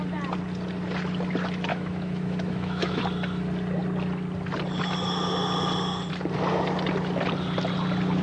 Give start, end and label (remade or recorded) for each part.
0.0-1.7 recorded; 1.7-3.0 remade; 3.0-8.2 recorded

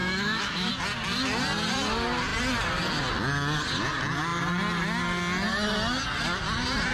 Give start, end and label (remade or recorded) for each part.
0.0-0.7 remade; 0.7-6.9 recorded

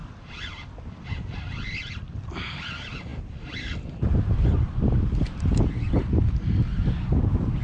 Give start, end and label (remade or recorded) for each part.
0.0-7.6 recorded

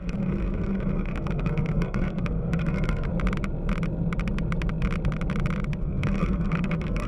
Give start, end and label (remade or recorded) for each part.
0.0-3.1 remade; 3.1-5.8 recorded; 5.8-7.1 remade